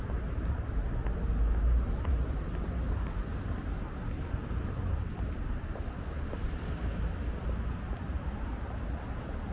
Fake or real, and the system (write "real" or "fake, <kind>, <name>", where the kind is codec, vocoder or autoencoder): real